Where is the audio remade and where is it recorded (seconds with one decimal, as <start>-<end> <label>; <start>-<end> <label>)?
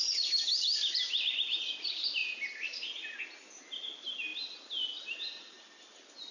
0.0-6.3 recorded